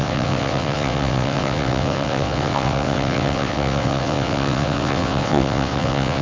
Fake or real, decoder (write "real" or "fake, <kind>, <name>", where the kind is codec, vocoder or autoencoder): fake, vocoder, WaveNeXt